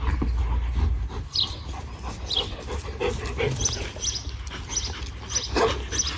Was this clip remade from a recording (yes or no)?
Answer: no